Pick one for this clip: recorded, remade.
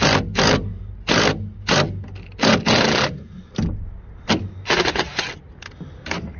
recorded